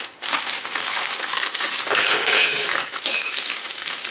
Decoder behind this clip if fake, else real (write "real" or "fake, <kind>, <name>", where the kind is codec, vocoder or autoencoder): fake, autoencoder, DAC-VAE